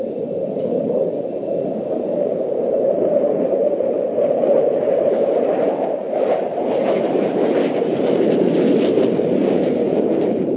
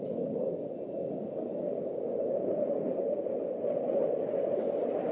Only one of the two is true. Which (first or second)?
second